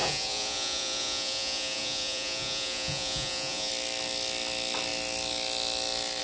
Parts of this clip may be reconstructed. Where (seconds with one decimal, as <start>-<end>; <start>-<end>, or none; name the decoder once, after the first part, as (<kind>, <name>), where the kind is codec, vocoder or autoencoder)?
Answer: 0.0-3.7 (vocoder, Vocos)